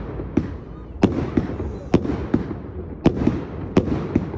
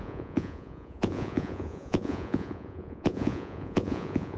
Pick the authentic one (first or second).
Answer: first